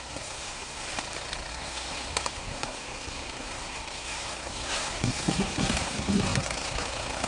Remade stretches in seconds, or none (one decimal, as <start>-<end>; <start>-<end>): 0.0-0.9; 1.5-7.3